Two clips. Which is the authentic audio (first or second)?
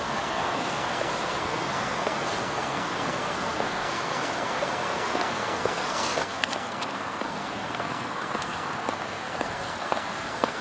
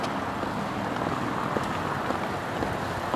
second